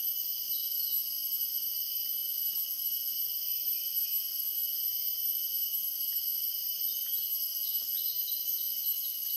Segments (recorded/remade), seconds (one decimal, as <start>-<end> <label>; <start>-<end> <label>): 0.0-9.4 recorded